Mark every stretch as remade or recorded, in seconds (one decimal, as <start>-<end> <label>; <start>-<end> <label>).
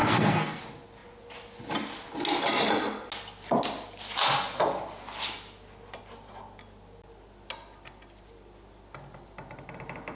0.0-0.6 remade; 0.6-10.2 recorded